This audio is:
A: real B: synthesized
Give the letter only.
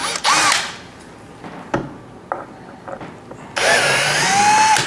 A